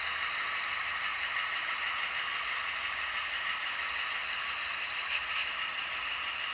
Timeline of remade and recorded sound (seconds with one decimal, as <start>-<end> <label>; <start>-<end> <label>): 0.0-6.5 recorded